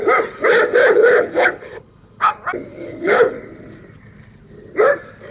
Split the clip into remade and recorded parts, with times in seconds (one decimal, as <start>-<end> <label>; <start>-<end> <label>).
0.0-0.8 recorded; 0.8-2.3 remade; 2.3-2.7 recorded; 2.7-3.3 remade; 3.3-5.3 recorded

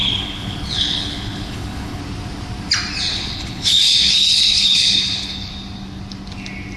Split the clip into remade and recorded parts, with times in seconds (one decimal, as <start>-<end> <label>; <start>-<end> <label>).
0.0-2.0 remade; 2.0-3.1 recorded; 3.1-5.5 remade; 5.5-6.8 recorded